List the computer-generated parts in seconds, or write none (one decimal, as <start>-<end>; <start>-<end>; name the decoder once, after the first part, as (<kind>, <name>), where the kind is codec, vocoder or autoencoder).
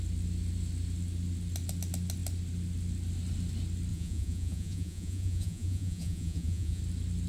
3.9-6.8 (vocoder, Vocos)